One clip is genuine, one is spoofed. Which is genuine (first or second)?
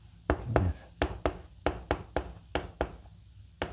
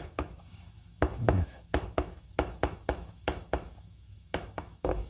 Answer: first